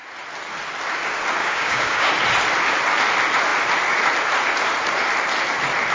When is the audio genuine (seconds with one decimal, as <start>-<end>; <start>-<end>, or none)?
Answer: 0.0-1.4; 2.1-5.9